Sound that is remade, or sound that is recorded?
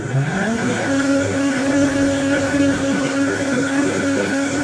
remade